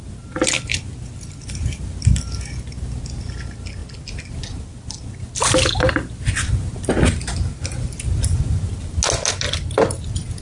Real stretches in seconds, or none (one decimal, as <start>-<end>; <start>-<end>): 0.0-10.4